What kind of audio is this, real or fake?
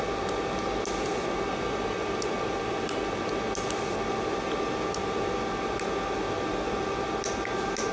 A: real